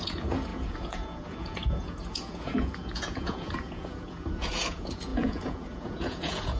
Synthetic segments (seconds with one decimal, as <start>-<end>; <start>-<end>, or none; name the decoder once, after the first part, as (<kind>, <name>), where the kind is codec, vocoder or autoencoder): 0.0-6.6 (vocoder, Vocos)